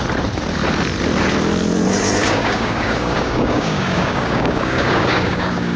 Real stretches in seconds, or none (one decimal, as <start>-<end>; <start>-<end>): 0.0-2.2